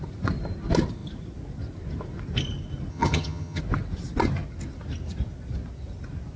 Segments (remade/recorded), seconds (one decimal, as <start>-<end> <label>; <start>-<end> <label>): 0.0-2.9 recorded; 2.9-3.6 remade; 3.6-6.4 recorded